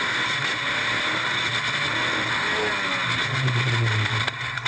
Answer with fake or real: real